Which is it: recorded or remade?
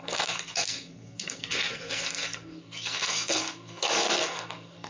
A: remade